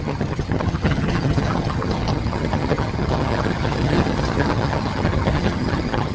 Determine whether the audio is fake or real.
fake